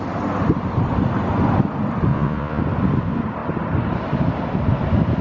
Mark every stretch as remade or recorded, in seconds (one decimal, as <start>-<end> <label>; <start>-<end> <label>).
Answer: 0.0-2.1 recorded; 2.1-2.6 remade; 2.6-5.2 recorded